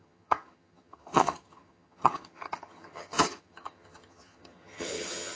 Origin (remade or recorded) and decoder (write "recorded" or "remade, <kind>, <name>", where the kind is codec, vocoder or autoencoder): remade, vocoder, HiFi-GAN